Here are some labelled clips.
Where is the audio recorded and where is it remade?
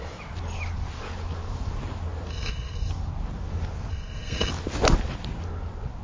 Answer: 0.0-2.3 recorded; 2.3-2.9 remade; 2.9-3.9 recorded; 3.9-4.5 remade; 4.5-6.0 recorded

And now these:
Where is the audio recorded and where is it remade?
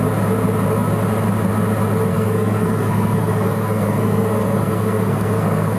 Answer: 0.0-2.1 recorded; 2.1-5.8 remade